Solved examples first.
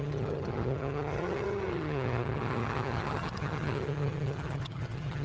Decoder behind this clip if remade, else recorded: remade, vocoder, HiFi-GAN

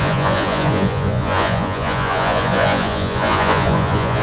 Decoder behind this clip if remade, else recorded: remade, vocoder, Vocos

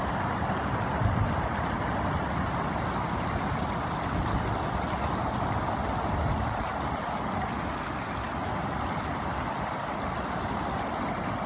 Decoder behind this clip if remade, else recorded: recorded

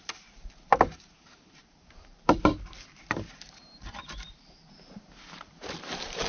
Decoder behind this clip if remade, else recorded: remade, vocoder, BigVGAN v2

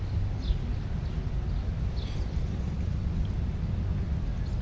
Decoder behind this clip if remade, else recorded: recorded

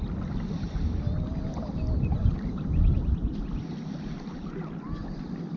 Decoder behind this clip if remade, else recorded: recorded